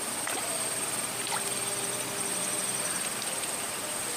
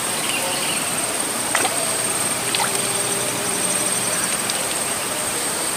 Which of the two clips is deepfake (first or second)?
second